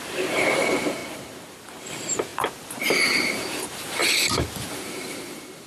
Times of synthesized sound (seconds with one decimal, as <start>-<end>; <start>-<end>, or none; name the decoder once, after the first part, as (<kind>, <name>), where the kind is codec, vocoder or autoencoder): 0.0-4.0 (vocoder, BigVGAN v2); 4.7-5.7